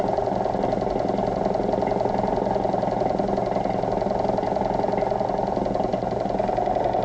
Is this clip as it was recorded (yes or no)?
yes